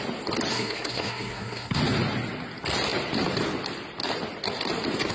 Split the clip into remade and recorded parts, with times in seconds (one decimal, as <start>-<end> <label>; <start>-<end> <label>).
0.0-0.5 recorded; 0.5-1.8 remade; 1.8-5.1 recorded